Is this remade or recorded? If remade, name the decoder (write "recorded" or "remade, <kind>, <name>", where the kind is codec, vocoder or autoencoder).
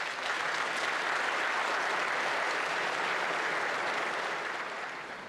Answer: recorded